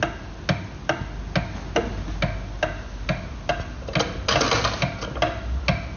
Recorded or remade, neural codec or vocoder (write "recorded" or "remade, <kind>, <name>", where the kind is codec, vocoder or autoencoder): recorded